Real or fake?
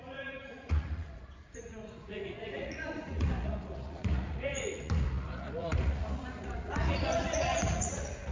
fake